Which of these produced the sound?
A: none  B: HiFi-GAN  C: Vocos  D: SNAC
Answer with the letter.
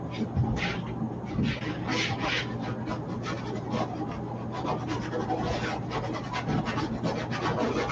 A